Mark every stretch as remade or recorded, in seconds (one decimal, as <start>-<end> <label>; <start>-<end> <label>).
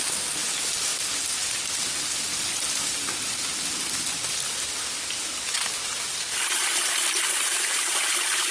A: 0.0-8.5 recorded